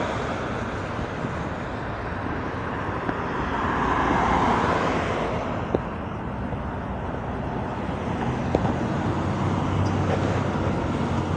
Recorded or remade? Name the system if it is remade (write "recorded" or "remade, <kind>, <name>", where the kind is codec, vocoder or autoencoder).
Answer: recorded